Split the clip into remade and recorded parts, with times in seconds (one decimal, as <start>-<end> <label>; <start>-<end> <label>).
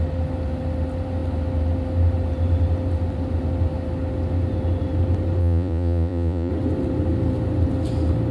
0.0-5.4 recorded; 5.4-6.5 remade; 6.5-8.3 recorded